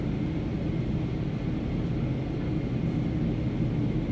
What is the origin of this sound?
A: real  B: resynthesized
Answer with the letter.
A